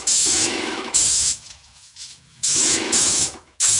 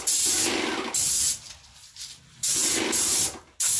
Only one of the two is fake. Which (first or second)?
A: first